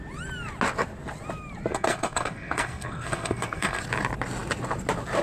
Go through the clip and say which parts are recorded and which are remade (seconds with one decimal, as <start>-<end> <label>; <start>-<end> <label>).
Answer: 0.0-1.7 recorded; 1.7-3.8 remade; 3.8-5.2 recorded